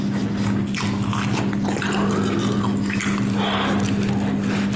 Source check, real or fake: real